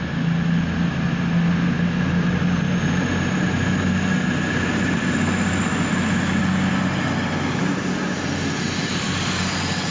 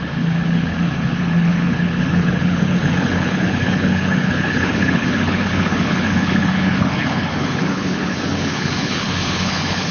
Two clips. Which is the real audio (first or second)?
first